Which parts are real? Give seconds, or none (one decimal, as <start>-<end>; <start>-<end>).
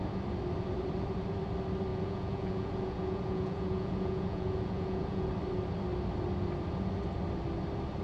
0.0-1.9; 5.3-8.0